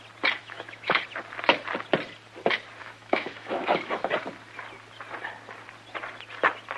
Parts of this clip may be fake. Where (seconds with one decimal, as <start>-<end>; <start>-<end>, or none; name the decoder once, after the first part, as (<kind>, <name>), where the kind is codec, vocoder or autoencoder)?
0.4-1.0 (autoencoder, DAC-VAE); 2.8-4.1